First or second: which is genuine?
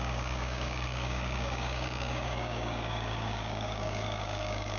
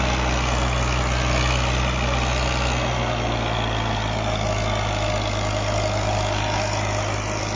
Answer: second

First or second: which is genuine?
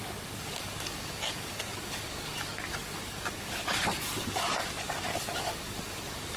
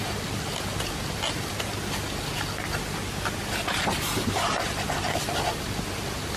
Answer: second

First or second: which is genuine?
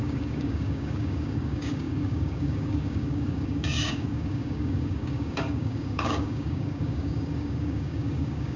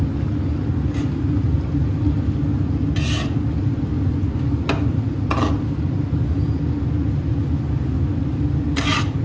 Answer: second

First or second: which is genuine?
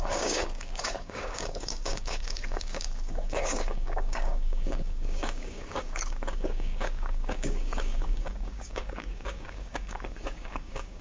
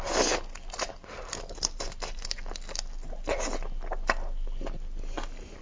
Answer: second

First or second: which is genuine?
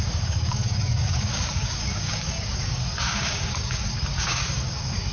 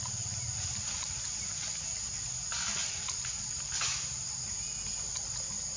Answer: second